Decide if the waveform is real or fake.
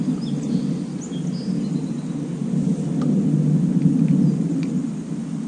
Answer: real